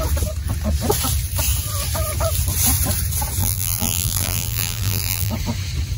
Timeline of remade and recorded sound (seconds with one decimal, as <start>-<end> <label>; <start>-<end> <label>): 0.0-3.4 recorded; 3.4-5.3 remade; 5.3-6.0 recorded